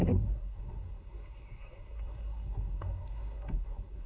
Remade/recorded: remade